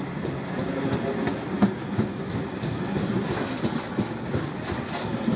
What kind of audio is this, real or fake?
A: real